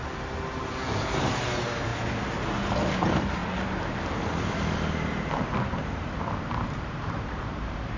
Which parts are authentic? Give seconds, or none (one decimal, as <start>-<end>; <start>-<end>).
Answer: 0.0-1.0; 1.9-2.7; 3.4-5.6